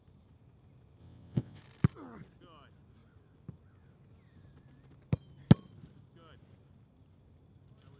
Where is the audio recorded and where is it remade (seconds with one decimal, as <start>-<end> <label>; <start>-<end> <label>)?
0.0-1.0 recorded; 1.0-1.6 remade; 1.6-8.0 recorded